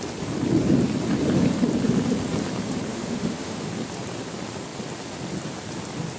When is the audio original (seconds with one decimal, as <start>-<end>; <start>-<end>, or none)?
0.0-2.9; 3.7-6.2